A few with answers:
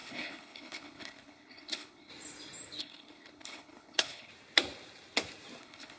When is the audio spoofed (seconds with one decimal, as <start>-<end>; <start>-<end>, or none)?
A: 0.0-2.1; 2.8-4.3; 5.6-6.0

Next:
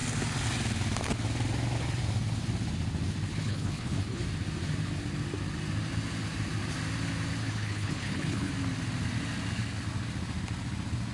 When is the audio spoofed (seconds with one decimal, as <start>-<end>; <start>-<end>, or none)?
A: 3.3-4.2; 7.4-8.5

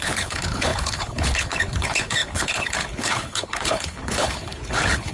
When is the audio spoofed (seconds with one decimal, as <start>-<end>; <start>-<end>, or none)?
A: 0.0-5.1